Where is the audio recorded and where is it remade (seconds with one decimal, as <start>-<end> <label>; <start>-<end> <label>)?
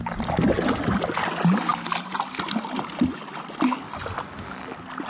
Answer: 0.0-5.1 recorded